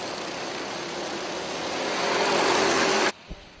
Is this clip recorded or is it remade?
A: recorded